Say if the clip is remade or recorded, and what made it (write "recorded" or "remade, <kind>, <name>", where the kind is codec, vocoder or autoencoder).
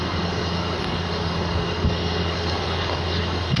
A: remade, codec, DAC